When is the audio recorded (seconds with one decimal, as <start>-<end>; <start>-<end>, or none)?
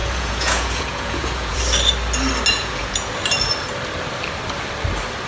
1.6-2.5; 3.1-5.3